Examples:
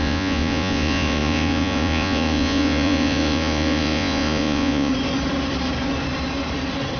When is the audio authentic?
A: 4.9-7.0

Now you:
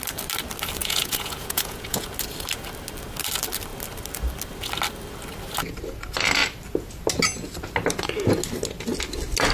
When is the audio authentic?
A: 0.0-0.8; 2.1-9.5